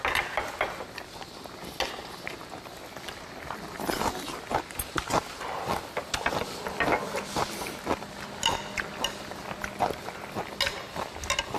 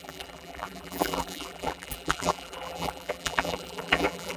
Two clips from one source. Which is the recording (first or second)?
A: first